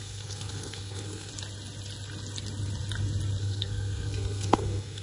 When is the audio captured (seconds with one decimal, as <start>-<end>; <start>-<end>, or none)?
1.3-3.4